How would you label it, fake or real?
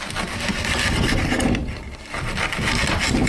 real